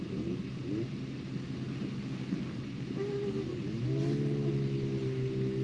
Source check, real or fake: real